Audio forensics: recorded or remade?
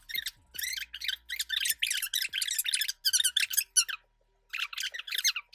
recorded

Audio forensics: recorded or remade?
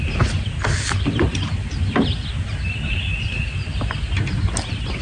recorded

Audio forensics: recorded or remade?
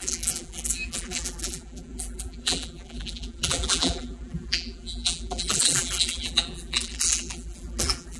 remade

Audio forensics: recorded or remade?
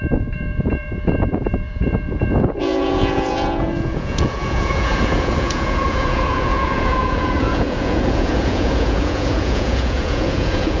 remade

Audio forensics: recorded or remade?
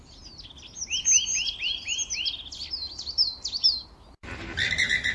recorded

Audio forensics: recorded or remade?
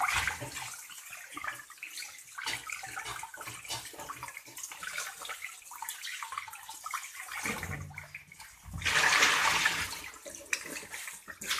recorded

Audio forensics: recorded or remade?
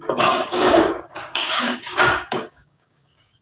remade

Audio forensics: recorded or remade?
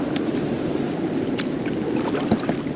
recorded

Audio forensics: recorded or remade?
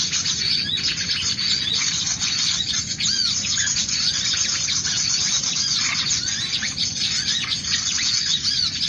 remade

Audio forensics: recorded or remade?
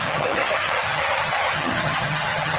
remade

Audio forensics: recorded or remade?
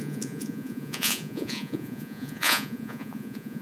remade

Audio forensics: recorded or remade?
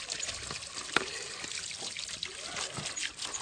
recorded